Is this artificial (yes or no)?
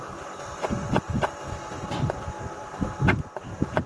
no